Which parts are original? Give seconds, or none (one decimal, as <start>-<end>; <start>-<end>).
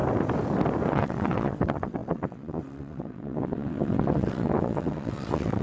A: 0.0-0.9